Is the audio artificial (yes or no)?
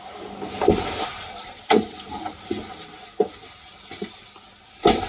no